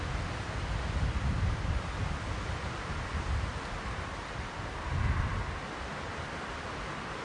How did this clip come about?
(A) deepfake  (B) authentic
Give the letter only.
B